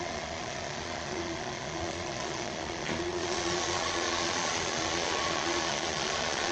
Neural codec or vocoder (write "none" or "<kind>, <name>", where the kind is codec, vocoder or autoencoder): vocoder, Vocos